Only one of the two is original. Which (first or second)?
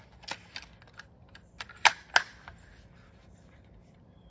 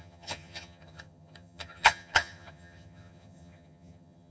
first